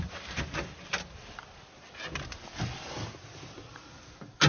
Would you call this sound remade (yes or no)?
no